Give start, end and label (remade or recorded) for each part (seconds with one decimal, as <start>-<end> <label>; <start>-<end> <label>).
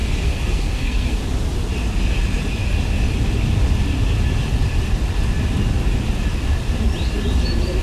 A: 0.0-1.2 remade; 1.2-7.8 recorded